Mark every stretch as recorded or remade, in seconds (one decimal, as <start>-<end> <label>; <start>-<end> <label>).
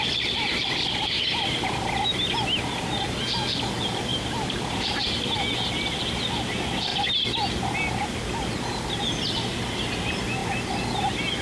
0.0-4.1 recorded; 4.1-5.2 remade; 5.2-11.4 recorded